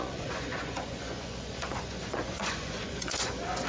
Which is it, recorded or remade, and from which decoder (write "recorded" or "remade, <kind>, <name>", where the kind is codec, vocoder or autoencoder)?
remade, vocoder, Vocos